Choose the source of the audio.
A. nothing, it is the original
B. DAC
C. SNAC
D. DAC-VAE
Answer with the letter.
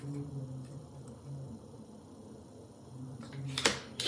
A